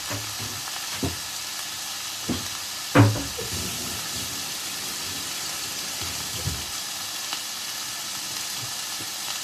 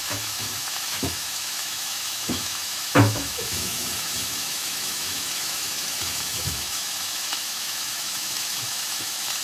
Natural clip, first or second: first